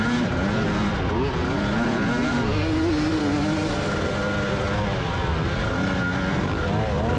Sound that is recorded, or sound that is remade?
recorded